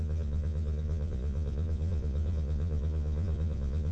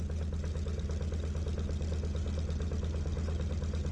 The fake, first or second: first